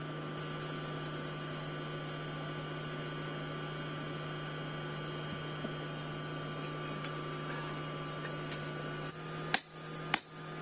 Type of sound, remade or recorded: recorded